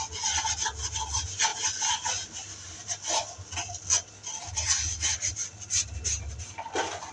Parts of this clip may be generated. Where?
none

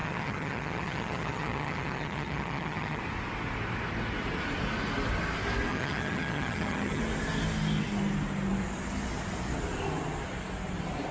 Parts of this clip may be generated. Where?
0.0-3.0; 5.7-7.0

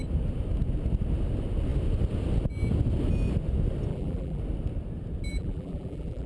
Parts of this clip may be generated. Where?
3.9-4.4; 5.3-6.3

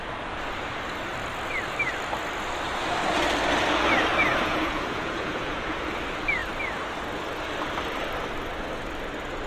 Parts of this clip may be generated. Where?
4.3-5.8

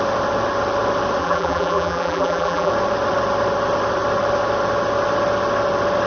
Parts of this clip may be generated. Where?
1.2-2.7